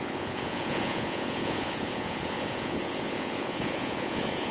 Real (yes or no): no